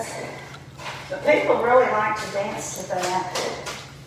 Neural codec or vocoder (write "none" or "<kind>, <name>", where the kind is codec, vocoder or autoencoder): none